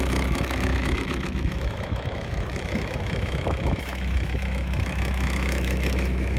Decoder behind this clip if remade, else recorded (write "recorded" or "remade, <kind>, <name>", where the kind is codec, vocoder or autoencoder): remade, autoencoder, DAC-VAE